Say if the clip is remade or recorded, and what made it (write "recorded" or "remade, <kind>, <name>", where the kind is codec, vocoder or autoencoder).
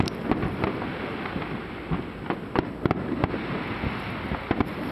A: recorded